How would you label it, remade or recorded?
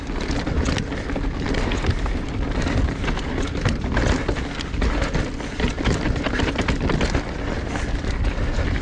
recorded